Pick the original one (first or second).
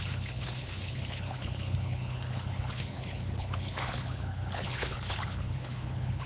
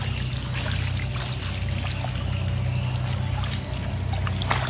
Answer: second